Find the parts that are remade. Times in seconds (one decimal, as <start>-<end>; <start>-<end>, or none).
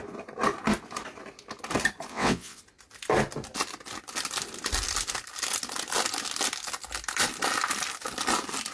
2.1-2.6